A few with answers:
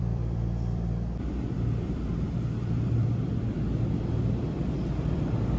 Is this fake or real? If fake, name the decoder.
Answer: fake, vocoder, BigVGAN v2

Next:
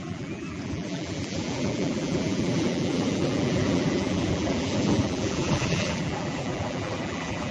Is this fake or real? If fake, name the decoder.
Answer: fake, vocoder, BigVGAN v2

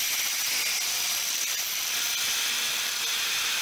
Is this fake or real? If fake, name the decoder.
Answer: real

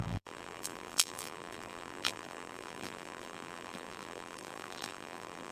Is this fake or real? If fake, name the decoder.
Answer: fake, vocoder, BigVGAN v2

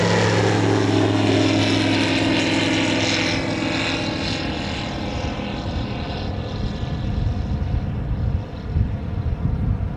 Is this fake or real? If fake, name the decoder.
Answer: real